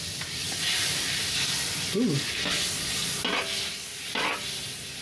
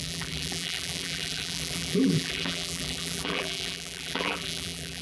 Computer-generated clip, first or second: second